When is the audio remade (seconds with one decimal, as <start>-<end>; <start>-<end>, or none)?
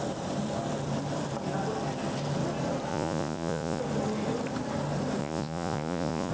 2.9-3.8; 5.2-6.3